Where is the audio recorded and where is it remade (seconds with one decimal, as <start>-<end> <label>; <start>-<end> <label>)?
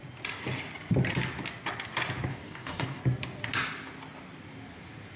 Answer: 0.0-2.3 recorded; 2.3-3.0 remade; 3.0-5.2 recorded